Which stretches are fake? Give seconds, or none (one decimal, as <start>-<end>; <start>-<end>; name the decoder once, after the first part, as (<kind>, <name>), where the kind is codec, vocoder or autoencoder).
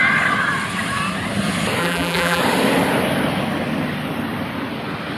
1.8-2.4 (vocoder, BigVGAN v2)